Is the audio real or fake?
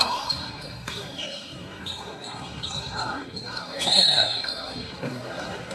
fake